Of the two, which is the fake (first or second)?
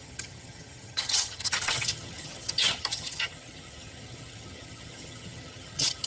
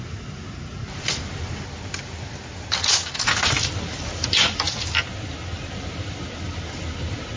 first